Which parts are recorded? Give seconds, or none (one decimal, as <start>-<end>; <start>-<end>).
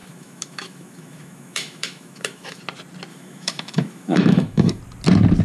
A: 2.6-3.1; 4.8-5.4